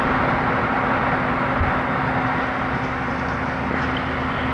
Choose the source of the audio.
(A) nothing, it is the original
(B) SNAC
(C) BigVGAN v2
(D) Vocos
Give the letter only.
A